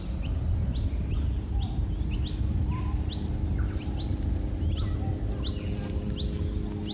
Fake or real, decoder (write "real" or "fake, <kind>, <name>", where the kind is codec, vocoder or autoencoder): real